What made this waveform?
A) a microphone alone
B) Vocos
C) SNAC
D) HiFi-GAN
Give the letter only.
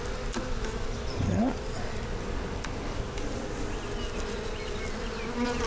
A